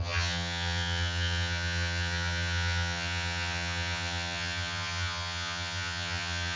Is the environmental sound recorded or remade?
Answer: remade